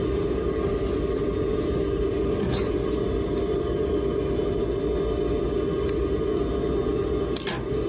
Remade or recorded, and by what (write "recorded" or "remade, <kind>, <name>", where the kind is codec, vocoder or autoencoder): recorded